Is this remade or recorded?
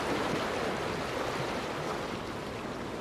recorded